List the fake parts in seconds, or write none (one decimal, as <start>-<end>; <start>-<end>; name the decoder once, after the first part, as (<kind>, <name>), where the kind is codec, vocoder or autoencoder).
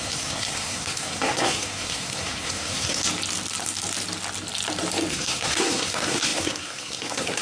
0.0-3.0 (codec, SNAC); 5.1-7.4